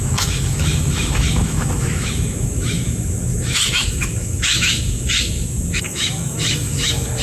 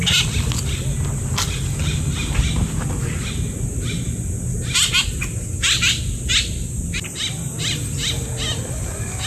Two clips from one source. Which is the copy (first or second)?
first